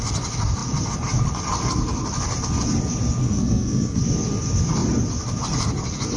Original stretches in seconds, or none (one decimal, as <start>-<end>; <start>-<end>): 0.0-3.2; 4.0-6.2